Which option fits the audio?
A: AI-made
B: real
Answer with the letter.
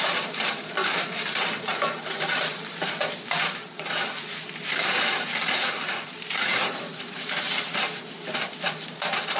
A